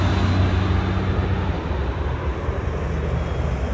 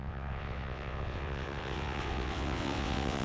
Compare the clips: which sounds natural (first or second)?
first